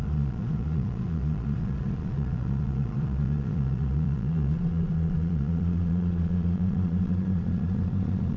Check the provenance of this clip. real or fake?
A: fake